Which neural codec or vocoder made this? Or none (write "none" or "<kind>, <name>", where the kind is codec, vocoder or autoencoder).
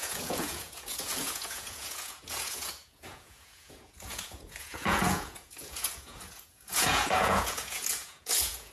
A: vocoder, Vocos